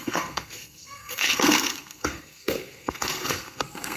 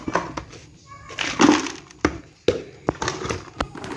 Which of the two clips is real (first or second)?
second